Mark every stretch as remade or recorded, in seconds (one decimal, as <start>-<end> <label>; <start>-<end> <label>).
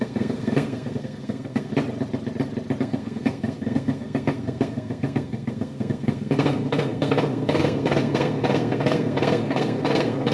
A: 0.0-1.7 remade; 1.7-2.8 recorded; 2.8-10.3 remade